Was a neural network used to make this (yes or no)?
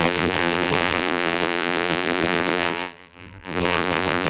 yes